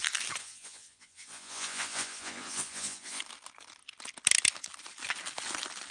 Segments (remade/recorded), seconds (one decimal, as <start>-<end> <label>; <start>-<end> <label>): 0.0-0.4 recorded; 0.4-3.2 remade; 3.2-5.9 recorded